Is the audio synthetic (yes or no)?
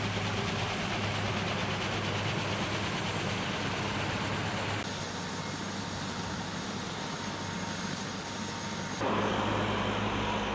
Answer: no